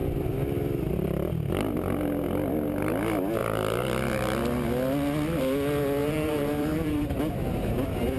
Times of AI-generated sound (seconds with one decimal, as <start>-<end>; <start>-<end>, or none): 6.0-7.2